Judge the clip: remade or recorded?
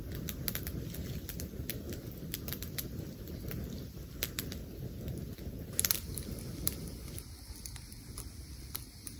recorded